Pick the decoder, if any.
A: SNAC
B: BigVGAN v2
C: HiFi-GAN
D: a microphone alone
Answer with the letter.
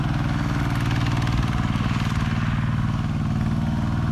D